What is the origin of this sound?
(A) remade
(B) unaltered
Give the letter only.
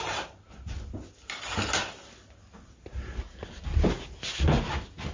B